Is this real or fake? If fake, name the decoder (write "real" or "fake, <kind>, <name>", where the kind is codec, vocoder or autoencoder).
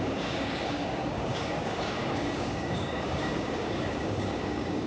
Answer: fake, codec, DAC